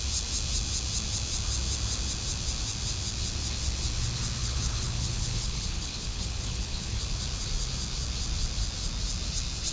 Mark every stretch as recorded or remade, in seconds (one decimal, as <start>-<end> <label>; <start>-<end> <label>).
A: 0.0-4.4 recorded; 4.4-7.0 remade; 7.0-9.7 recorded